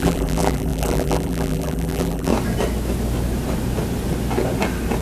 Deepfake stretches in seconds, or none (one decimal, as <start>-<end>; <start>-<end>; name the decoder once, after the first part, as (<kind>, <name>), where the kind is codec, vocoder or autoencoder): 0.0-2.3 (vocoder, BigVGAN v2)